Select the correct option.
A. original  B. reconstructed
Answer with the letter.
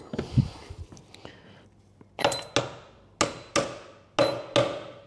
A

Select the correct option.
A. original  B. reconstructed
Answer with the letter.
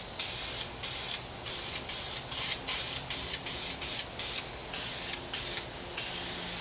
A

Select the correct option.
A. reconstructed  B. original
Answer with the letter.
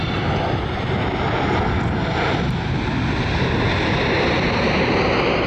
B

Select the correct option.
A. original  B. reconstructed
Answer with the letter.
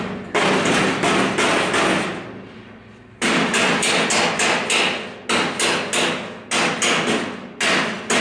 A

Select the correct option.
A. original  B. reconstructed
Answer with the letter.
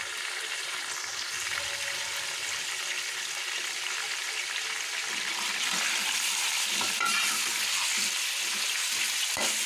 A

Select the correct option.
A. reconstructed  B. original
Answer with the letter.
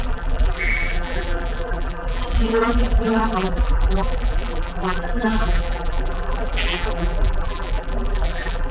A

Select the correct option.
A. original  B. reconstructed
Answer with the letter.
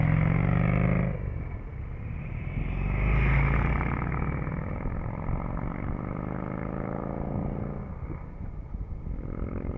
A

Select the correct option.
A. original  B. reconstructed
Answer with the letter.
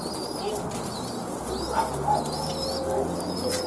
A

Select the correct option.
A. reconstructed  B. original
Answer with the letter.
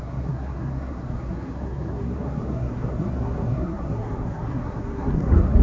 A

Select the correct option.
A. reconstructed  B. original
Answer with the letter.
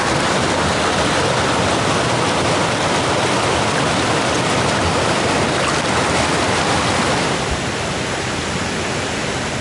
B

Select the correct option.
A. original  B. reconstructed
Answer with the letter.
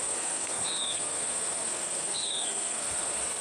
B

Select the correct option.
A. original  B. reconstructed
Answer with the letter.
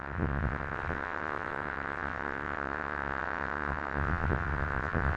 B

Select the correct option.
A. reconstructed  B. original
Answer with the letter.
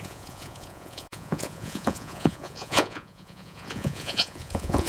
A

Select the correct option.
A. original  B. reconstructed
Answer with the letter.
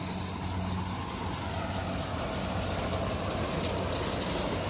A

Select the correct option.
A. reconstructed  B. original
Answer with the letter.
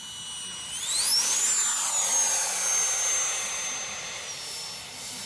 B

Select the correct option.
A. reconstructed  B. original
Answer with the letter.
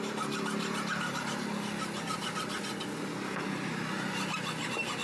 B